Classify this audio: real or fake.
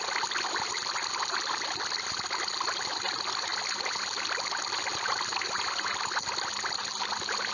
real